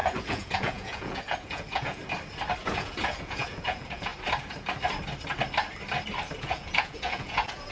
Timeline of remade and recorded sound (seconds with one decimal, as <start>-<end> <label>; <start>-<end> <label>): 0.0-2.0 remade; 2.0-2.6 recorded; 2.6-4.1 remade; 4.1-6.4 recorded; 6.4-7.7 remade